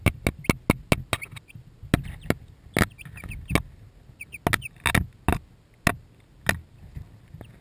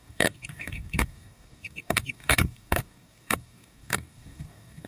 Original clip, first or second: first